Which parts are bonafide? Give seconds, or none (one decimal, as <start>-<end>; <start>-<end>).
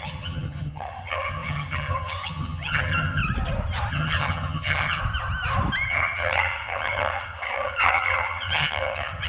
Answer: 3.2-3.9; 5.0-5.9